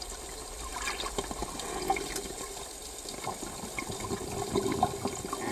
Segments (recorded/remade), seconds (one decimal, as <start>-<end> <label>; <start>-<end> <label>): 0.0-5.5 recorded